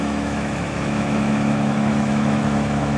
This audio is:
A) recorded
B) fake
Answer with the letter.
B